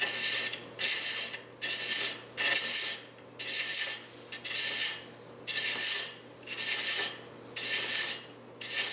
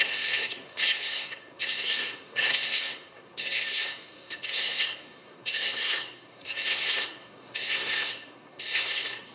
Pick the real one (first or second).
first